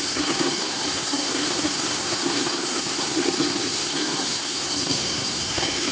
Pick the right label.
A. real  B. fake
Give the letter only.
B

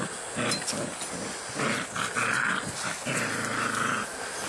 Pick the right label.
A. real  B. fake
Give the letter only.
A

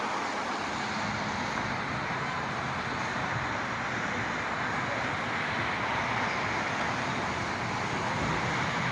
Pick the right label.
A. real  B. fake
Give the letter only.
A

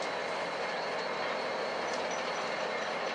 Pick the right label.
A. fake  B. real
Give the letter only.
B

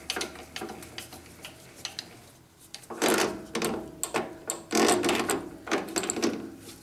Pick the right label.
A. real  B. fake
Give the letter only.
A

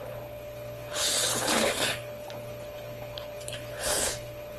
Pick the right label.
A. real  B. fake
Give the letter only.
B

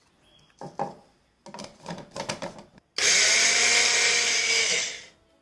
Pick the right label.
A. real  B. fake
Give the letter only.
A